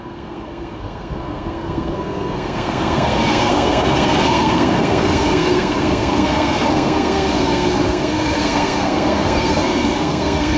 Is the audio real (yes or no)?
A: no